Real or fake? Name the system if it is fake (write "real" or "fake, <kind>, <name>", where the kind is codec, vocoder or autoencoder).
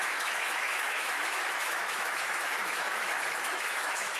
fake, autoencoder, DAC-VAE